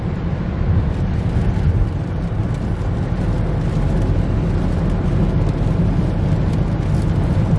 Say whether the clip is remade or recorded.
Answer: recorded